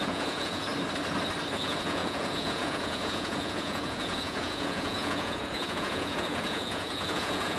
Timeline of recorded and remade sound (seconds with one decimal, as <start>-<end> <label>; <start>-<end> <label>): 0.0-0.7 remade; 0.7-1.6 recorded; 1.6-7.6 remade